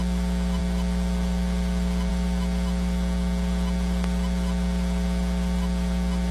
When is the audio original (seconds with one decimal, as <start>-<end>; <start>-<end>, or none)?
0.0-6.3